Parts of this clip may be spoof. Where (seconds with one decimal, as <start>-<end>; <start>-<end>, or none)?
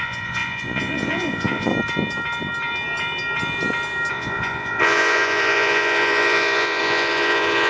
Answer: 0.0-1.7; 4.1-7.7